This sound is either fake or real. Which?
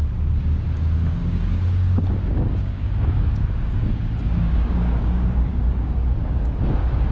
fake